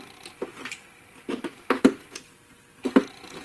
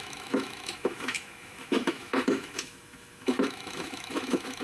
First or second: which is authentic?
first